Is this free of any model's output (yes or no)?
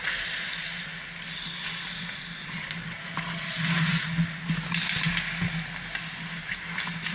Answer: yes